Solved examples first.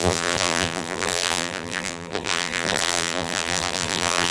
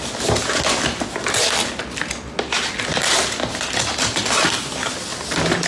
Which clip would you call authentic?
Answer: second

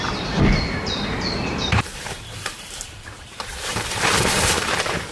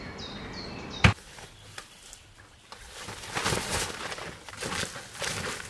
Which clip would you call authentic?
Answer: second